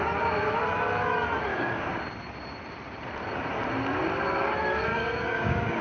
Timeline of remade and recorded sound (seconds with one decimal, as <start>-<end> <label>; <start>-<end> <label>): 0.0-1.5 recorded; 1.5-2.0 remade; 2.0-4.9 recorded; 4.9-5.8 remade

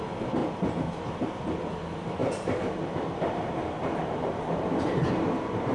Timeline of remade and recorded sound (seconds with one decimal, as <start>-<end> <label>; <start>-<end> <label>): 0.0-0.4 recorded; 0.4-1.1 remade; 1.1-2.2 recorded; 2.2-5.7 remade

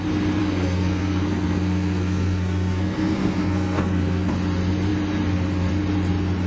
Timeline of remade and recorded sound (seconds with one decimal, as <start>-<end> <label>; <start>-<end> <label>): 0.0-0.4 recorded; 0.4-4.3 remade; 4.3-6.5 recorded